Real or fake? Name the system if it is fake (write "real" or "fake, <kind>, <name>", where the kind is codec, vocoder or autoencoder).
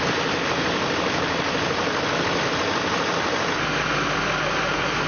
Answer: real